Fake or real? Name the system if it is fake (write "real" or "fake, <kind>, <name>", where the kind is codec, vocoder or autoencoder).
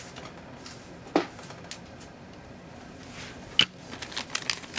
real